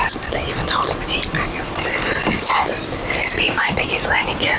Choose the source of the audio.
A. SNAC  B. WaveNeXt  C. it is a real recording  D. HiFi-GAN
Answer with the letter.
C